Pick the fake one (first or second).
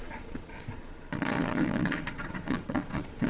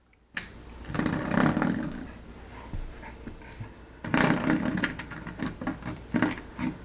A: first